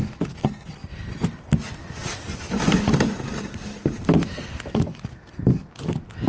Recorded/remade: recorded